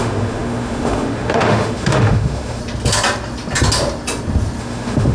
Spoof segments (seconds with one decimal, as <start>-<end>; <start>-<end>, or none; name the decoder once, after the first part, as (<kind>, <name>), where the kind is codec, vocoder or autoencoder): 0.0-2.6 (autoencoder, DAC-VAE); 4.6-5.1